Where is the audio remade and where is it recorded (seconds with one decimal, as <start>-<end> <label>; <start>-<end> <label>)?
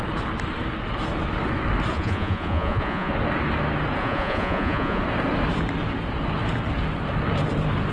0.0-1.9 recorded; 1.9-3.1 remade; 3.1-4.0 recorded; 4.0-5.0 remade; 5.0-7.9 recorded